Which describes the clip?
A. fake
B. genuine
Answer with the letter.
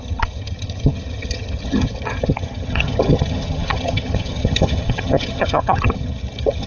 A